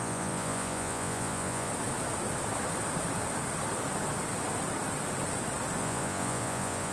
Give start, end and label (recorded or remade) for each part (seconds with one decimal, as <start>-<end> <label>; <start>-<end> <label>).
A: 0.0-1.7 remade; 1.7-5.8 recorded; 5.8-6.9 remade